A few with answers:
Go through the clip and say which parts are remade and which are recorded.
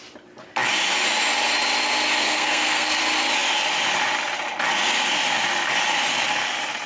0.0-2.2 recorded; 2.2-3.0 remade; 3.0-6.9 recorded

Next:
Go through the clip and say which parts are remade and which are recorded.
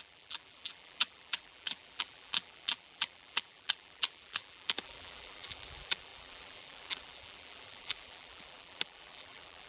0.0-9.7 remade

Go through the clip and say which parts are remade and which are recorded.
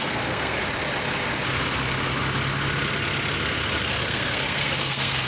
0.0-0.6 remade; 0.6-3.8 recorded; 3.8-5.3 remade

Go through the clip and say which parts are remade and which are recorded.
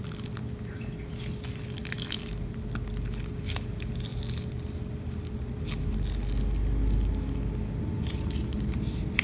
0.0-9.2 recorded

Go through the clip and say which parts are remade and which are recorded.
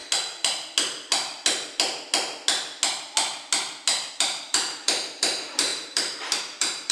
0.0-4.1 recorded; 4.1-6.9 remade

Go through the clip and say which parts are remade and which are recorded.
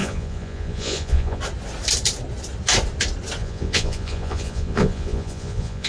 0.0-1.4 remade; 1.4-3.4 recorded; 3.4-5.9 remade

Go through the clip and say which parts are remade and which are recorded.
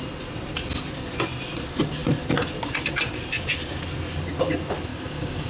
0.0-4.9 recorded; 4.9-5.5 remade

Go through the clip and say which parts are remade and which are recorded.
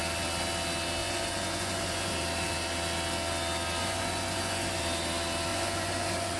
0.0-1.0 recorded; 1.0-2.1 remade; 2.1-3.8 recorded; 3.8-4.8 remade; 4.8-5.5 recorded; 5.5-6.4 remade